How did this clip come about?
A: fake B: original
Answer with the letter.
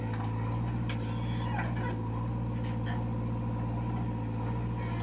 B